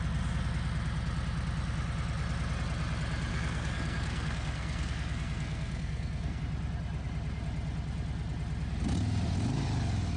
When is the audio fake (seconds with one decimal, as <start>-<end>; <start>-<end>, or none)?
3.3-6.4